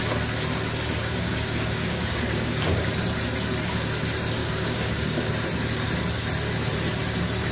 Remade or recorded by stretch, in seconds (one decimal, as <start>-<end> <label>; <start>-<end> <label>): 0.0-1.0 recorded; 1.0-2.9 remade; 2.9-4.4 recorded; 4.4-5.3 remade; 5.3-7.5 recorded